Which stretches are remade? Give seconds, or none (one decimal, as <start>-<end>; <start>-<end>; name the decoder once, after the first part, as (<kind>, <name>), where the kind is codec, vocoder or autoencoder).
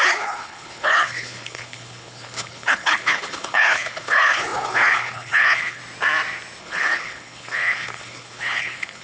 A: 0.0-5.8 (codec, HILCodec); 6.6-9.0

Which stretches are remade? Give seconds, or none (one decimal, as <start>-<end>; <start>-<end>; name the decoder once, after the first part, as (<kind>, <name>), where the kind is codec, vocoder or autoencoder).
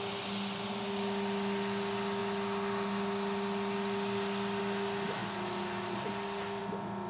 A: none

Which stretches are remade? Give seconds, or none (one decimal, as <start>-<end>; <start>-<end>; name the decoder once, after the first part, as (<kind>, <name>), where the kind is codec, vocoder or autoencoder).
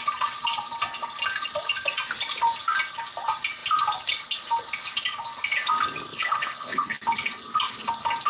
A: 6.1-6.9 (codec, HILCodec)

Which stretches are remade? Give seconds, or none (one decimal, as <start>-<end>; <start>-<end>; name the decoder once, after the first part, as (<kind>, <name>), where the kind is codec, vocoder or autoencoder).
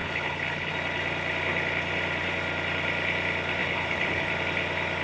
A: 0.0-0.7 (codec, HILCodec); 3.6-4.3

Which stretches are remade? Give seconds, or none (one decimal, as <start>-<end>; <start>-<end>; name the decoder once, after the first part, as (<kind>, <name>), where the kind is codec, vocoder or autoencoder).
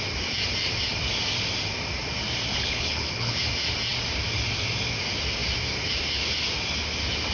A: 2.5-3.4 (codec, HILCodec)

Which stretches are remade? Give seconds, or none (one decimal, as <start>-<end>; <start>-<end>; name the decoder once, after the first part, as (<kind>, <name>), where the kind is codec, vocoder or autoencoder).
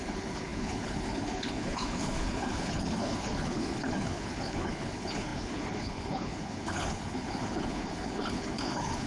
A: 0.0-9.1 (codec, HILCodec)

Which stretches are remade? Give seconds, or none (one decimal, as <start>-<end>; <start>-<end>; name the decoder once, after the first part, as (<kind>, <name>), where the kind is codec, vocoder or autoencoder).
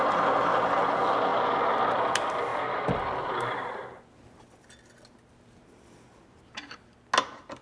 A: none